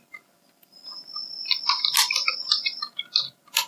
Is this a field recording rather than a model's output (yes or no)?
yes